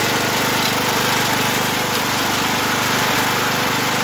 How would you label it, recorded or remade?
recorded